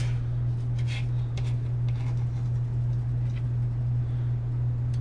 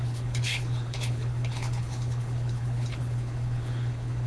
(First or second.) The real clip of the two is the first